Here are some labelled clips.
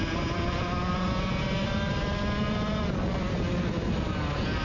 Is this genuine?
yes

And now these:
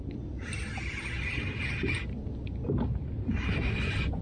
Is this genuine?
yes